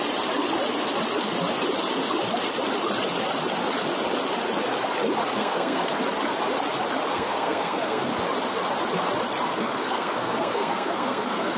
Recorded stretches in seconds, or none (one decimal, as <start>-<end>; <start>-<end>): 0.0-5.4; 6.0-7.1; 8.1-9.5